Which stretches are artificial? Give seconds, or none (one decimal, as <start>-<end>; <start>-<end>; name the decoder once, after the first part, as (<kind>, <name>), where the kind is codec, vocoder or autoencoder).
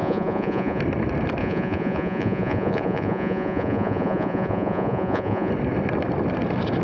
0.0-0.8 (vocoder, Vocos); 1.4-5.5